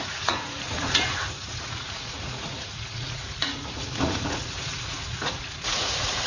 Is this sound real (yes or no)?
no